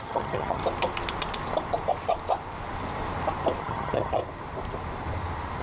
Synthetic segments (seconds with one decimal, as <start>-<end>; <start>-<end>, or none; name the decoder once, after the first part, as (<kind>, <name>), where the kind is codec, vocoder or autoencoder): 0.0-0.6 (vocoder, HiFi-GAN); 3.6-4.2